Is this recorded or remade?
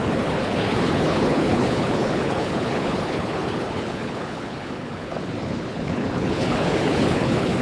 remade